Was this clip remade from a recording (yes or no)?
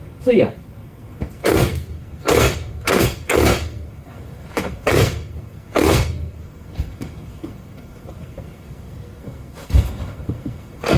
yes